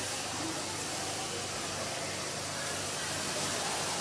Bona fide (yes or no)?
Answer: yes